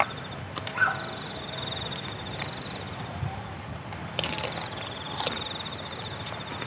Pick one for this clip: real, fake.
real